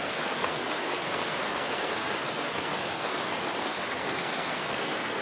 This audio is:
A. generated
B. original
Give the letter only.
A